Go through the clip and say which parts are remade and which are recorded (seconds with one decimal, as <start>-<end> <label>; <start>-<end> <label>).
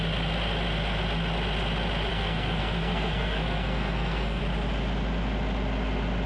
0.0-2.1 recorded; 2.1-4.4 remade; 4.4-6.3 recorded